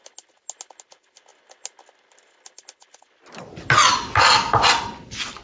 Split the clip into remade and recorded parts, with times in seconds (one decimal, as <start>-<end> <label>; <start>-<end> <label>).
0.0-5.4 recorded

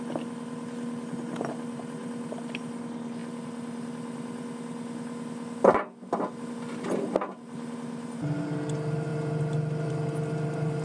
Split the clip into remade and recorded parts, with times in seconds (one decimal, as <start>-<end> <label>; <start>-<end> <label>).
0.0-10.8 recorded

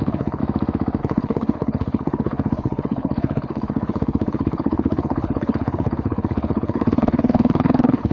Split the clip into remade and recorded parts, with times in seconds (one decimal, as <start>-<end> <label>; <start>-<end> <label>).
0.0-0.4 remade; 0.4-1.0 recorded; 1.0-8.1 remade

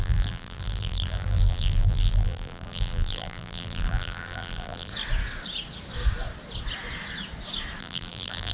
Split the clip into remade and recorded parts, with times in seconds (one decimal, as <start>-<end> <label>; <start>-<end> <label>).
0.0-4.9 remade; 4.9-7.8 recorded; 7.8-8.5 remade

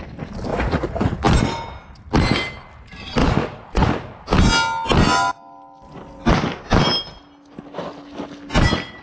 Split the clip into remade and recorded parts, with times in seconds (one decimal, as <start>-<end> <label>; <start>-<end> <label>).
0.0-0.5 recorded; 0.5-1.2 remade; 1.2-3.2 recorded; 3.2-3.9 remade; 3.9-9.0 recorded

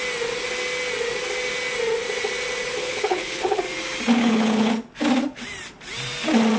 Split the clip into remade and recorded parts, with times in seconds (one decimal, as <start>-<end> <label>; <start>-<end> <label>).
0.0-2.8 recorded; 2.8-3.6 remade; 3.6-4.2 recorded; 4.2-4.7 remade; 4.7-6.6 recorded